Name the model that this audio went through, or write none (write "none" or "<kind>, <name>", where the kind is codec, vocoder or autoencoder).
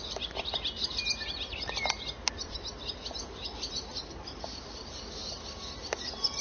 none